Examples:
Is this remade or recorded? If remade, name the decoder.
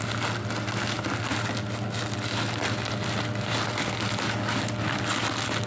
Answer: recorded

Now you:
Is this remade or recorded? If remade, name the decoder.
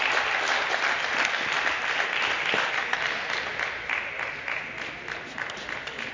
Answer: recorded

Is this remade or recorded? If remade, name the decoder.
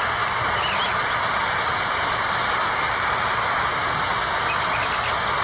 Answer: recorded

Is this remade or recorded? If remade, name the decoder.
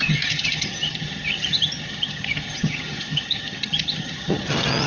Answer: remade, vocoder, HiFi-GAN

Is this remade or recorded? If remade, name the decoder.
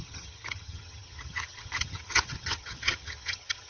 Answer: remade, vocoder, HiFi-GAN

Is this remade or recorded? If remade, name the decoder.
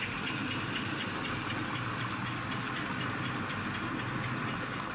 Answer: recorded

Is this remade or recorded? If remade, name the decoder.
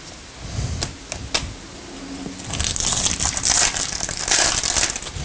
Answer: recorded